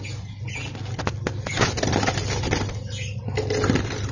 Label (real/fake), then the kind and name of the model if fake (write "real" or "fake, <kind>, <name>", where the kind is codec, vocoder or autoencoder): real